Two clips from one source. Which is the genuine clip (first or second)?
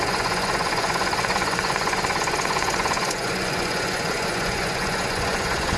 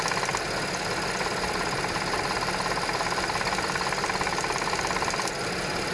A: second